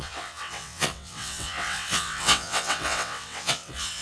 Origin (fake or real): fake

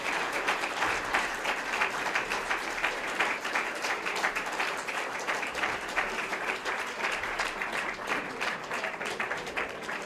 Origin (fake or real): fake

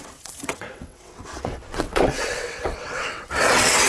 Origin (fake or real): fake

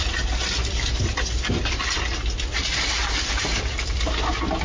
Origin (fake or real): real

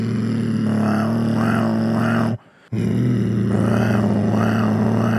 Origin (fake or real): real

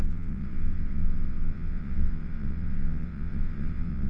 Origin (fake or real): fake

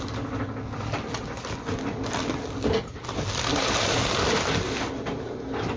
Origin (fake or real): real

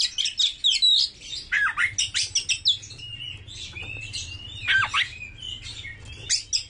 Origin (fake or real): real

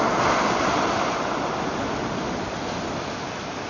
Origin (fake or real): real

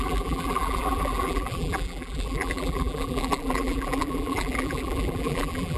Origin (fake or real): fake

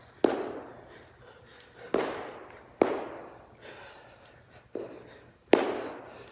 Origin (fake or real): real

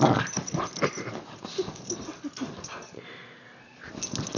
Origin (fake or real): real